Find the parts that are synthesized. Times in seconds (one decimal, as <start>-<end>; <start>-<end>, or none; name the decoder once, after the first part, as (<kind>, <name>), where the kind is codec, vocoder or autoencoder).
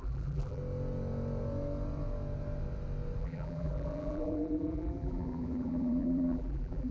0.0-0.6 (vocoder, BigVGAN v2); 3.2-6.9